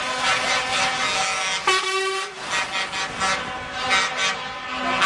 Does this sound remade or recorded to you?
recorded